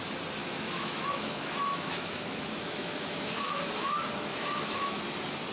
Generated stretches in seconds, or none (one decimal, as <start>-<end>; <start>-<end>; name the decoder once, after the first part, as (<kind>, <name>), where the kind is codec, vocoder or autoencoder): 0.4-3.7 (autoencoder, DAC-VAE); 4.3-5.0